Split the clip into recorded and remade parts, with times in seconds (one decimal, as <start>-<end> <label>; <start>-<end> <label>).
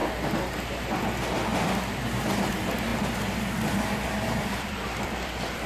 0.0-2.9 recorded; 2.9-5.7 remade